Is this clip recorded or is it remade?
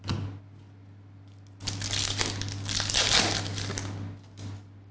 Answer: recorded